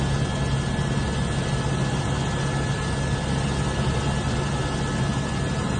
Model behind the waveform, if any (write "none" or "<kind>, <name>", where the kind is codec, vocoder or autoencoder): none